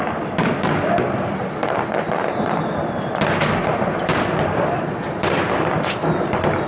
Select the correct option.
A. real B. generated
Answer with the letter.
B